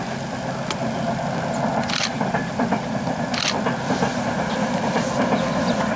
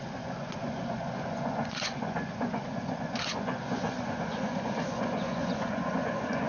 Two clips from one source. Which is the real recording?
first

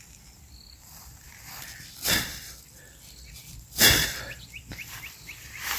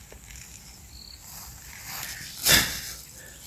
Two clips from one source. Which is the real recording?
second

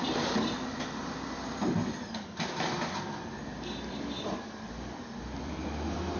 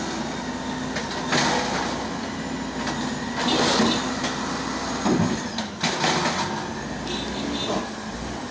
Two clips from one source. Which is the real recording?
second